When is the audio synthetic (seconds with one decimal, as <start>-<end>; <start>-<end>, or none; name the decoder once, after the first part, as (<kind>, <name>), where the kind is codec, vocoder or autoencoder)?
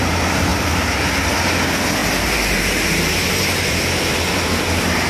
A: 0.5-1.1 (vocoder, BigVGAN v2); 2.0-4.5